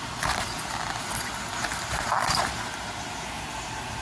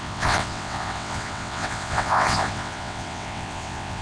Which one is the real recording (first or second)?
first